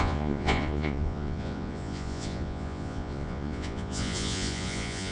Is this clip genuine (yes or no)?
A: no